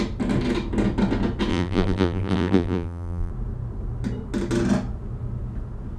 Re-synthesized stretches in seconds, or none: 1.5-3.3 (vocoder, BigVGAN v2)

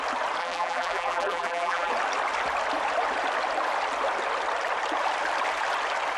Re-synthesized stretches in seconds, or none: 0.4-1.9 (vocoder, BigVGAN v2)

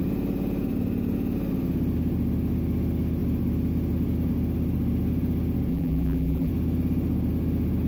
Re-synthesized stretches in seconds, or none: 5.7-6.5 (vocoder, BigVGAN v2)

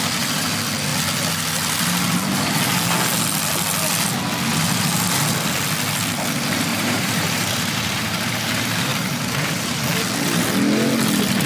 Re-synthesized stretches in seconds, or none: 6.7-9.8 (vocoder, BigVGAN v2)